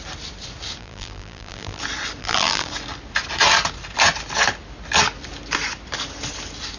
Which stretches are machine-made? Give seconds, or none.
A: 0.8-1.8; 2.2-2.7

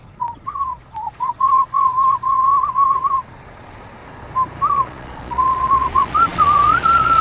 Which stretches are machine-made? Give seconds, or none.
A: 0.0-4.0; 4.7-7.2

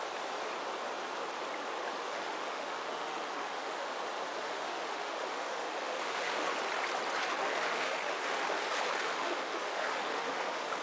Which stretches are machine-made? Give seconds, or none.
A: 2.0-3.9; 4.4-6.5; 7.2-10.8

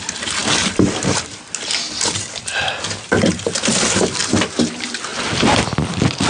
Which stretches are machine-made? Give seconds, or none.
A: none